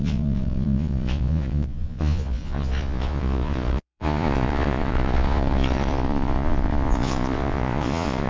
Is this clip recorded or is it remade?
remade